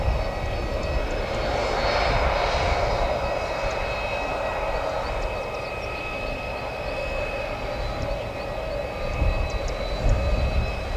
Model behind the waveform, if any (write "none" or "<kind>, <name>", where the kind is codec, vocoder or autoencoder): none